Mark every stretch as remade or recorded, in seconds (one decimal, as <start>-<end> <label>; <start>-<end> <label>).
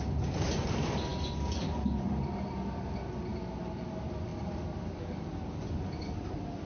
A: 0.0-6.7 recorded